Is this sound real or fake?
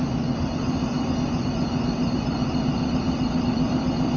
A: real